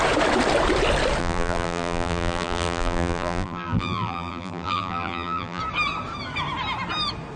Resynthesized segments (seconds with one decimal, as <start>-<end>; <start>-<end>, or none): 1.2-5.6